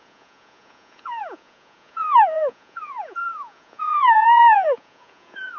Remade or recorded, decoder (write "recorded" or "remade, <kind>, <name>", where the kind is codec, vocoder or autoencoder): remade, vocoder, Vocos